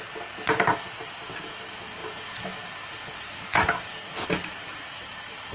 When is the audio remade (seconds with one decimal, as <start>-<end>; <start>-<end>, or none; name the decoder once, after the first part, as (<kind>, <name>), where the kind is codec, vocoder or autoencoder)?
none